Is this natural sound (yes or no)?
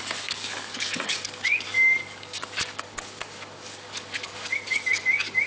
no